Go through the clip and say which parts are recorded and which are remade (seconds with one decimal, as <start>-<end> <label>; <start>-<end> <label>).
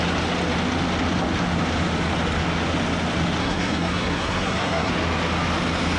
0.0-3.4 recorded; 3.4-4.9 remade; 4.9-6.0 recorded